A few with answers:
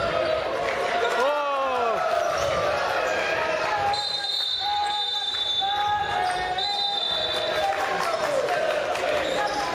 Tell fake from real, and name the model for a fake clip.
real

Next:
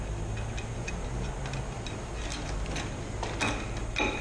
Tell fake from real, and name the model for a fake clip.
real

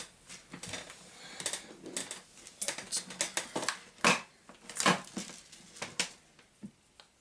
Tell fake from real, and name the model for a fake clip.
real